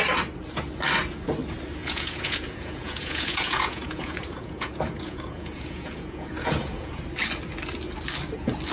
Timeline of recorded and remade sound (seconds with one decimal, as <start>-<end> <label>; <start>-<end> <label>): 0.0-1.8 recorded; 1.8-7.0 remade; 7.0-8.7 recorded